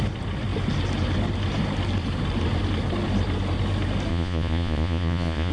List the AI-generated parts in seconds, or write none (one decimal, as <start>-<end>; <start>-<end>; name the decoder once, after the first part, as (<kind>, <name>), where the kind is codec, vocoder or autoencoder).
4.1-5.5 (vocoder, Vocos)